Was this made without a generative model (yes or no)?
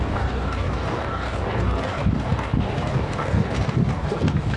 no